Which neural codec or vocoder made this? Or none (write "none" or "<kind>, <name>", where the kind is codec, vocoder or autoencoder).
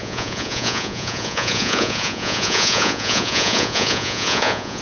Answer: vocoder, Vocos